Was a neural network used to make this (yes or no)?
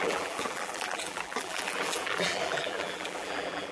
yes